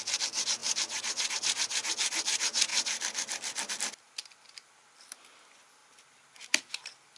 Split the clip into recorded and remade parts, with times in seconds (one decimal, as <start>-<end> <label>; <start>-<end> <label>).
0.0-7.2 recorded